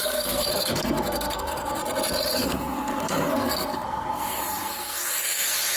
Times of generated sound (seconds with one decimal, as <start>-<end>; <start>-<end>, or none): 0.0-1.8; 2.4-5.8